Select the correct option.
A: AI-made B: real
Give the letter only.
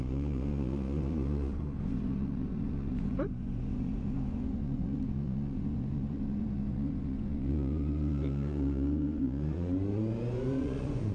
A